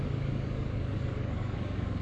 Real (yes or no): no